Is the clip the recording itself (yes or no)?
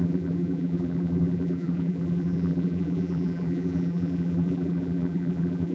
no